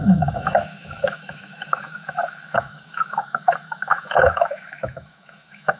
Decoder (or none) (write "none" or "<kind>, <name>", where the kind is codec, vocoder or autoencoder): autoencoder, DAC-VAE